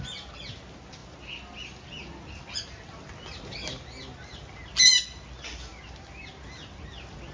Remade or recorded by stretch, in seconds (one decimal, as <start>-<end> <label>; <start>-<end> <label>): 0.0-7.3 recorded